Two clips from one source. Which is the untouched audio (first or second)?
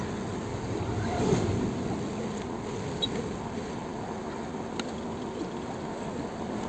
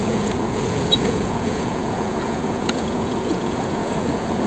first